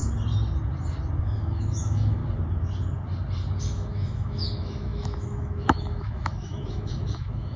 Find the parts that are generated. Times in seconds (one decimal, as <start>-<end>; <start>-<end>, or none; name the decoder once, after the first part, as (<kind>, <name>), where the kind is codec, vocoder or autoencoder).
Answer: 1.2-2.2 (autoencoder, DAC-VAE); 3.6-7.6